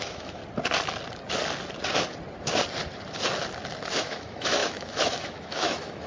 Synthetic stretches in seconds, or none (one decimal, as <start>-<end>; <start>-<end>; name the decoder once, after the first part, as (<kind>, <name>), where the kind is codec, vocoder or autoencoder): 0.0-0.4 (autoencoder, DAC-VAE); 4.0-6.1